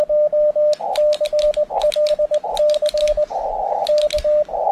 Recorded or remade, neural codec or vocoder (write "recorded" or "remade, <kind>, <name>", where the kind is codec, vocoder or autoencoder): recorded